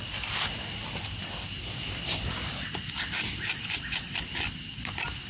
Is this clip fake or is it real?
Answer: real